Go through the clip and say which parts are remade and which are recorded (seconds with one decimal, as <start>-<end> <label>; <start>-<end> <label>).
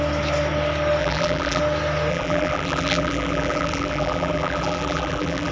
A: 0.0-1.0 recorded; 1.0-1.6 remade; 1.6-2.1 recorded; 2.1-5.5 remade